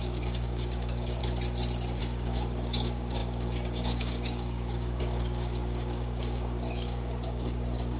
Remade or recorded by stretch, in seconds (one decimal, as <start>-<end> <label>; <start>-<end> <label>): 0.0-1.2 remade; 1.2-2.0 recorded; 2.0-8.0 remade